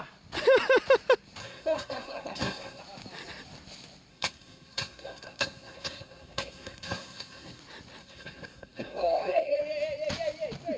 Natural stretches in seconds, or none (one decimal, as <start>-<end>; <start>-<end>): 0.0-1.4; 2.8-4.1; 7.6-8.0; 9.6-10.8